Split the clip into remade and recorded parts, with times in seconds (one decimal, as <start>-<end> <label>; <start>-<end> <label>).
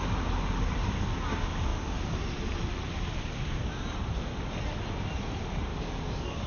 0.0-5.7 recorded; 5.7-6.5 remade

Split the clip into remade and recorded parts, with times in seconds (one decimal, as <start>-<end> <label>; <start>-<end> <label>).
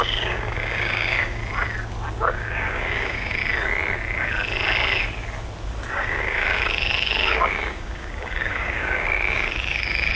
0.0-1.4 remade; 1.4-2.1 recorded; 2.1-3.4 remade; 3.4-5.9 recorded; 5.9-10.1 remade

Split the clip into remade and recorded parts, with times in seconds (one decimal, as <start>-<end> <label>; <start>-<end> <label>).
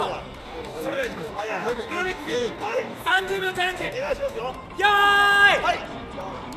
0.0-0.4 recorded; 0.4-4.4 remade; 4.4-6.6 recorded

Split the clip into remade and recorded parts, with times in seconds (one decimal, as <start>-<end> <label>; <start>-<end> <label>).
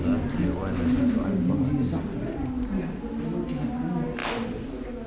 0.0-5.1 recorded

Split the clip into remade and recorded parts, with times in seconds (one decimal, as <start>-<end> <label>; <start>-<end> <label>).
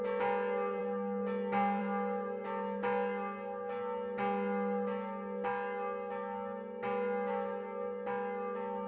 0.0-8.9 recorded